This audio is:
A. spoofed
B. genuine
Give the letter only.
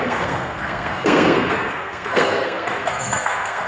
A